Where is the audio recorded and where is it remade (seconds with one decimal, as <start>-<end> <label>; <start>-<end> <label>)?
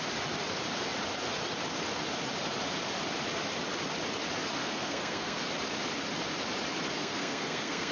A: 0.0-4.6 recorded; 4.6-5.4 remade; 5.4-7.0 recorded; 7.0-7.9 remade